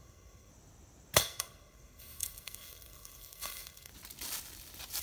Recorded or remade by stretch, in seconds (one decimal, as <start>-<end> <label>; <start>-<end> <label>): 0.0-0.5 remade; 0.5-1.2 recorded; 1.2-3.9 remade; 3.9-5.0 recorded